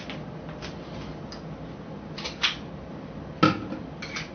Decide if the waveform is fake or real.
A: real